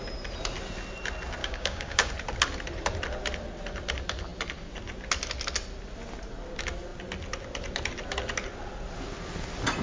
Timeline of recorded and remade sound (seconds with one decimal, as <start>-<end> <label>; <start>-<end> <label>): 0.0-1.4 recorded; 1.4-2.1 remade; 2.1-9.8 recorded